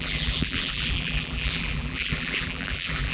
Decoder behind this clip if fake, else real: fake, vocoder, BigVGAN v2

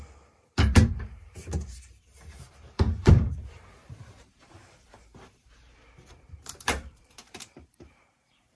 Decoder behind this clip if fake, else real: fake, vocoder, BigVGAN v2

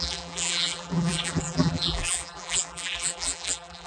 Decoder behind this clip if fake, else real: fake, vocoder, BigVGAN v2